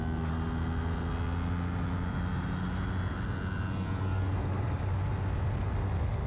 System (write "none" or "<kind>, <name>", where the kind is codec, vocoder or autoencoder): none